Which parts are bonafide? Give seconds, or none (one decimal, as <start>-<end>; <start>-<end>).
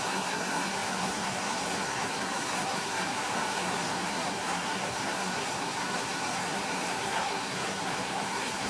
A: none